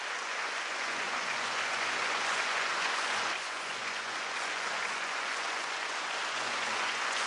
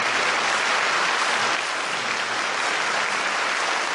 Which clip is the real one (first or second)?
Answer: second